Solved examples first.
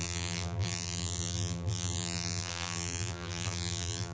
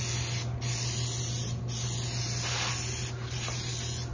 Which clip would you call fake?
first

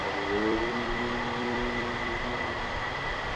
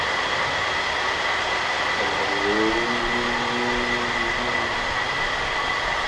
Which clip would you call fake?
first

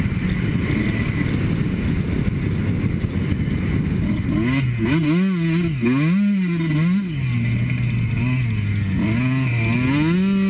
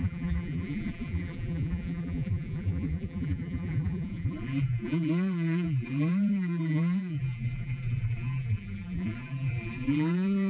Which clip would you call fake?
second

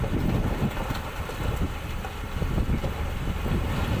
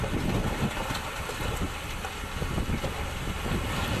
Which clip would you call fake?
first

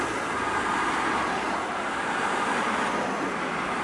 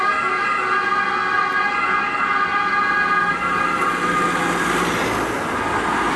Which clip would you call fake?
first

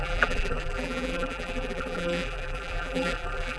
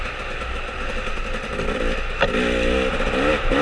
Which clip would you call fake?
first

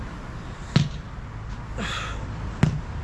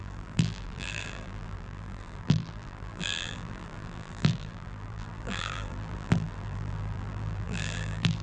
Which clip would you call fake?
second